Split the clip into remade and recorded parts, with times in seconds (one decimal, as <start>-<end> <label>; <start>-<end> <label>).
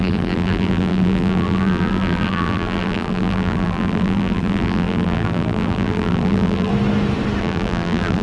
0.0-6.7 remade; 6.7-7.4 recorded; 7.4-8.2 remade